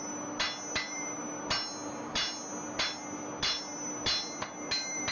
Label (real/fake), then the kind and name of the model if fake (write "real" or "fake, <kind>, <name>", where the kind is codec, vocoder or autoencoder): real